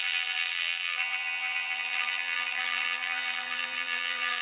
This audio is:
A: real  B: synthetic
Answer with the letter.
B